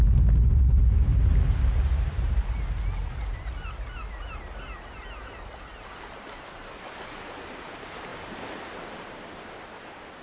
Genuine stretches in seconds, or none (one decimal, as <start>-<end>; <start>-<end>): 0.0-10.2